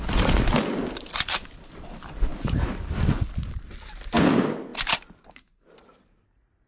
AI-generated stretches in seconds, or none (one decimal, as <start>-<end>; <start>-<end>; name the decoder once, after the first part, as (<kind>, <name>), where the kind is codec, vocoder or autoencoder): none